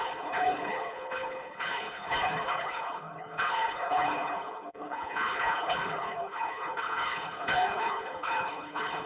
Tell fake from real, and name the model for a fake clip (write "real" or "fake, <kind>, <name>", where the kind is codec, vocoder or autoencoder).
fake, codec, HILCodec